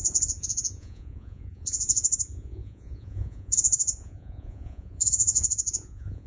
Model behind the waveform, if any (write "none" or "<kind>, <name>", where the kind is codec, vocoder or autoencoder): vocoder, Vocos